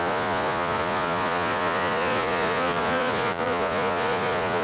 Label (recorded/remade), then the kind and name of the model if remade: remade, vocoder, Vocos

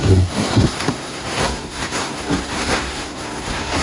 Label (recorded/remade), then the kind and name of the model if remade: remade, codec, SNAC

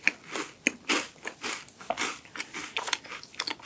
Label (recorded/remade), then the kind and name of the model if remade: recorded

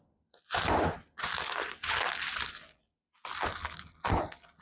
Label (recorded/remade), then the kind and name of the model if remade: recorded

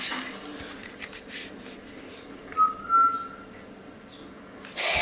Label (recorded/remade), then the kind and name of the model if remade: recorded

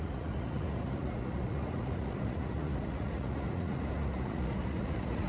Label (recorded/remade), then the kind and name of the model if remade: remade, vocoder, Vocos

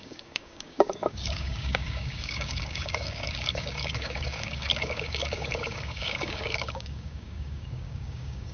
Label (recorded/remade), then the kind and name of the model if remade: remade, codec, DAC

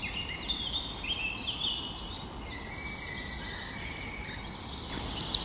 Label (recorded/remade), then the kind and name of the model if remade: recorded